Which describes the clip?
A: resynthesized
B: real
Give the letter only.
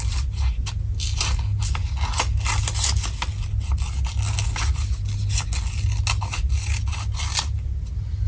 B